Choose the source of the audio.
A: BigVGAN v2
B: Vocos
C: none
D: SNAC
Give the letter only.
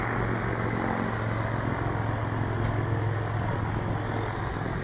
C